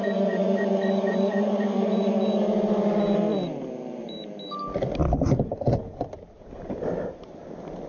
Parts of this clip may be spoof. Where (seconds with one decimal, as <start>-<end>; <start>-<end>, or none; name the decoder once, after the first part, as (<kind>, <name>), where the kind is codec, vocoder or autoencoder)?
0.0-2.1 (vocoder, Vocos)